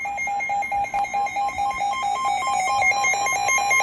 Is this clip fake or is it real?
real